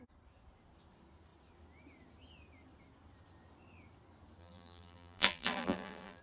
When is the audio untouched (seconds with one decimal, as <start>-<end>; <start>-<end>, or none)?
0.0-4.4